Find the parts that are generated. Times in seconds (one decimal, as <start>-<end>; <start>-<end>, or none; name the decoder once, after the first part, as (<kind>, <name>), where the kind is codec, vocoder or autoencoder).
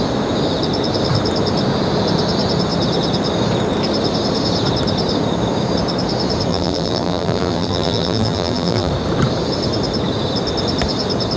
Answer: 6.5-8.9 (vocoder, BigVGAN v2)